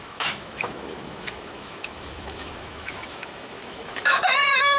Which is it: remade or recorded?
remade